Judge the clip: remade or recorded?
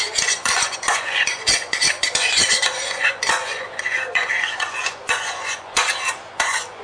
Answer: remade